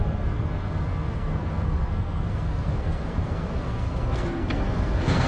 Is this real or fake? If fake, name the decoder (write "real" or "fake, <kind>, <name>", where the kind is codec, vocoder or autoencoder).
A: fake, codec, SNAC